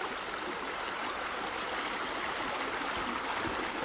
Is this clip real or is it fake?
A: real